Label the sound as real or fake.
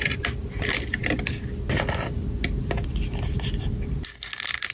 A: real